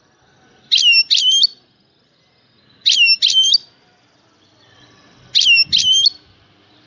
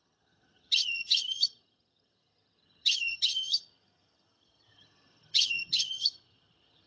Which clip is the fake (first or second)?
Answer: second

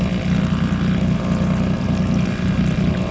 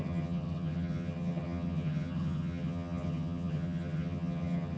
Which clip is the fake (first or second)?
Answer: second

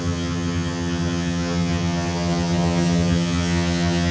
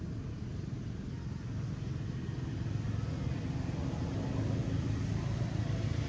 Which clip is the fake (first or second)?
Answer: first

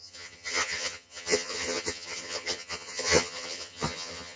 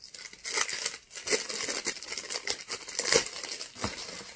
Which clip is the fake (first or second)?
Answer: first